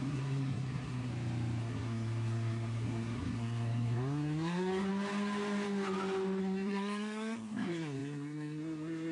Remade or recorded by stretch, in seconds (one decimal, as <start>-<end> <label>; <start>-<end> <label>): 0.0-1.1 remade; 1.1-1.6 recorded; 1.6-4.9 remade; 4.9-6.4 recorded; 6.4-9.1 remade

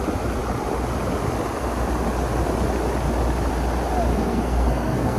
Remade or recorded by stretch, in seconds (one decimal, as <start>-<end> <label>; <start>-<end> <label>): 0.0-4.1 recorded; 4.1-5.2 remade

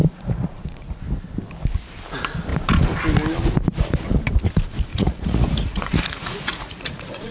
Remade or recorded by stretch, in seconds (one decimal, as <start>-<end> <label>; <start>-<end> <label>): 0.0-1.0 remade; 1.0-4.9 recorded; 4.9-7.3 remade

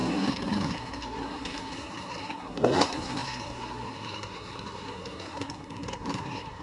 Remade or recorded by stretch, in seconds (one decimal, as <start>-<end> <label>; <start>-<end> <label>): 0.0-6.6 remade

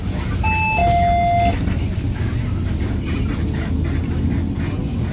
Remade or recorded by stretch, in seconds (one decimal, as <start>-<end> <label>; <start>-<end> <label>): 0.0-5.1 recorded